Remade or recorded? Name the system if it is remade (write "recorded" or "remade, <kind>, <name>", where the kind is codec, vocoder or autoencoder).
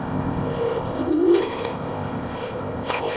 remade, codec, ZipCodec